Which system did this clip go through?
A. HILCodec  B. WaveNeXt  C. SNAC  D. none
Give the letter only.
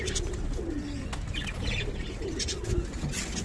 D